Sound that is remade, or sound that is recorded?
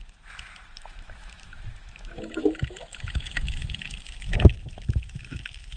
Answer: remade